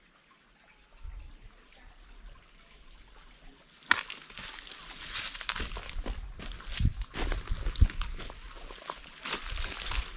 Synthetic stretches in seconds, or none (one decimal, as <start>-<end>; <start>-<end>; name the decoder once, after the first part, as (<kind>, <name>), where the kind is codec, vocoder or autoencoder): none